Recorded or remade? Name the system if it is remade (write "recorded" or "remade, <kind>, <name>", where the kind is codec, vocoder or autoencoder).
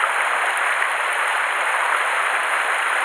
remade, vocoder, BigVGAN v2